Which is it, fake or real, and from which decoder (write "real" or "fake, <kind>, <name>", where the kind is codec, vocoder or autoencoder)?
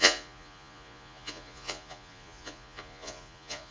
fake, vocoder, Vocos